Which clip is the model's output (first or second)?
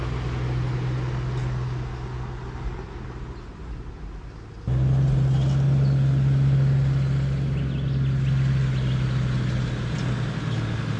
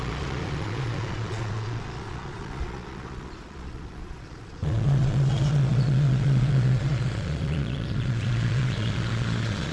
second